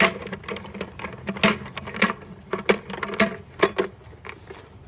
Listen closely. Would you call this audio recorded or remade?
recorded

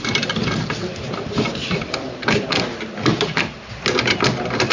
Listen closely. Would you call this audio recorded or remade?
recorded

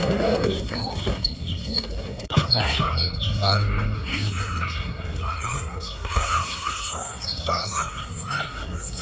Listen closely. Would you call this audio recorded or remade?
remade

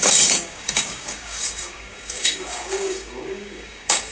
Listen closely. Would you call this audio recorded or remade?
remade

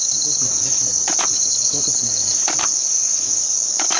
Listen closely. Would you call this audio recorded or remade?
remade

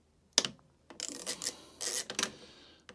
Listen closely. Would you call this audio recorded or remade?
recorded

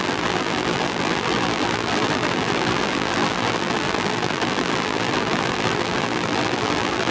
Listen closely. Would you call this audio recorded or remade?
remade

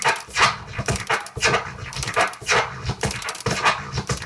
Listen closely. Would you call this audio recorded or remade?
recorded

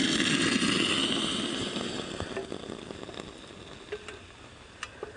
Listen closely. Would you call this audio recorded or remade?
recorded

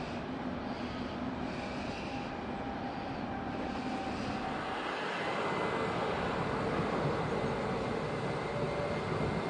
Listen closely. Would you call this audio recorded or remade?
recorded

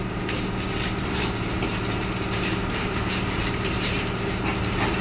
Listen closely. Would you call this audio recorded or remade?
recorded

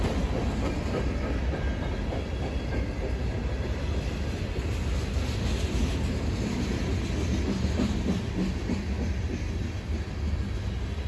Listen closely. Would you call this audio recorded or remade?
recorded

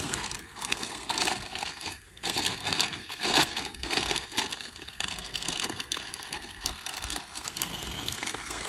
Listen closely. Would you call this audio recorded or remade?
remade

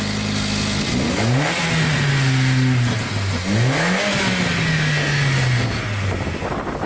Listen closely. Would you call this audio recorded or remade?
recorded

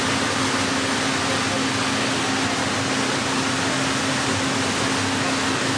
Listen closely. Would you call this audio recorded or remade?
recorded